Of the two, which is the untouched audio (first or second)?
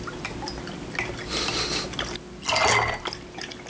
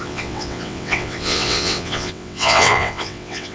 first